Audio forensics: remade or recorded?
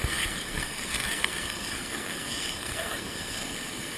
remade